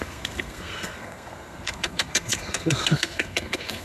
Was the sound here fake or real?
fake